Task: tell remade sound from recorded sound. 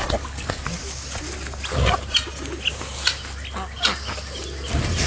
recorded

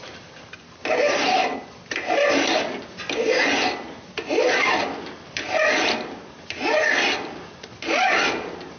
recorded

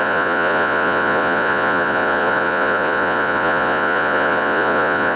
remade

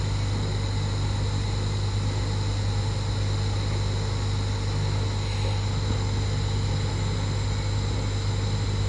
recorded